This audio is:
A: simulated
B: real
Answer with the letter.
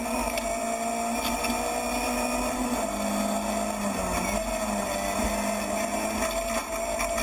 B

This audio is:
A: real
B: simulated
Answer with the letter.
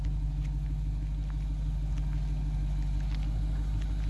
A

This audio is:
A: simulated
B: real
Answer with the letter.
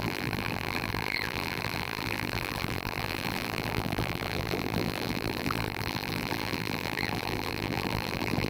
A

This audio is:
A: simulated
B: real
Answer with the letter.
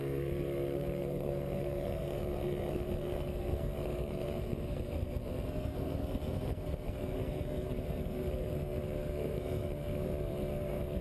A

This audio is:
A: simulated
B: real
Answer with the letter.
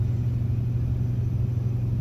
B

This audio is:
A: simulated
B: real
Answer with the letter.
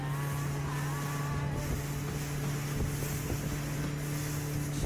B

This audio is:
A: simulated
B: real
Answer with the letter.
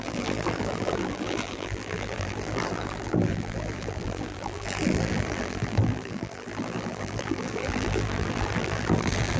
A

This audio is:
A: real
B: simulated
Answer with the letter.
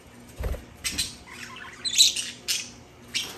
A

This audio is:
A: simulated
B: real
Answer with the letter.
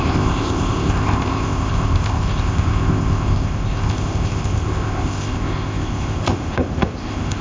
A